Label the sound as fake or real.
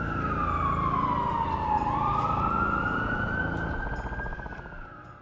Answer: real